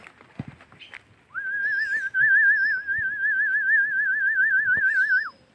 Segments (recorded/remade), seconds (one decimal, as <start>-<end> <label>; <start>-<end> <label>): 0.0-5.5 recorded